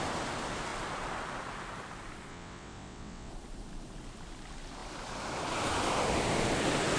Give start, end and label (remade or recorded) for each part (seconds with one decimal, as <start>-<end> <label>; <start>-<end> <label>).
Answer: 0.0-2.3 recorded; 2.3-3.3 remade; 3.3-7.0 recorded